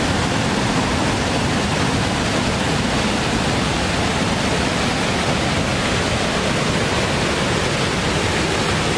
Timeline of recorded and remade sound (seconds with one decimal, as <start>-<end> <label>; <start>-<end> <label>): 0.0-9.0 recorded